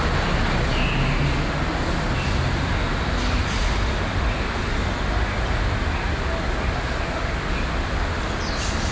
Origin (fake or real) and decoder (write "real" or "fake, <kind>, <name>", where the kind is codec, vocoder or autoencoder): real